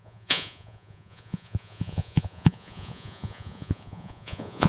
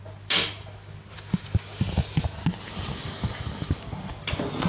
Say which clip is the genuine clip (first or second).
second